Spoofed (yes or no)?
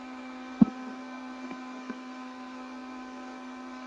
yes